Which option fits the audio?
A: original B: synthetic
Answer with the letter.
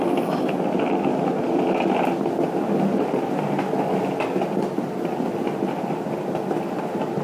A